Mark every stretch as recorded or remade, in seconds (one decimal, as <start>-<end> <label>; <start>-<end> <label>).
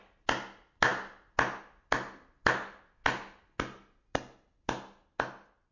0.0-5.7 recorded